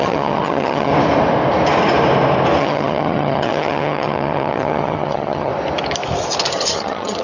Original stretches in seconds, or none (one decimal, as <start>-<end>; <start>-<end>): 0.9-2.6; 5.5-6.5